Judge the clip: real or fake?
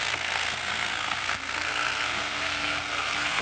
fake